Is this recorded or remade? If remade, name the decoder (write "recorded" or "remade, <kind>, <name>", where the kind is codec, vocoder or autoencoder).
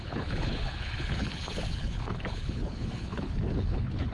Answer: remade, codec, HILCodec